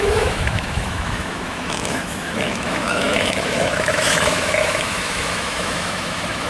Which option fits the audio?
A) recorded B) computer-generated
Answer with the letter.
B